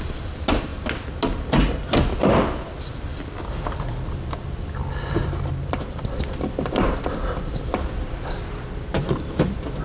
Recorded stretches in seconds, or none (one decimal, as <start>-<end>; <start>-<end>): 0.7-1.7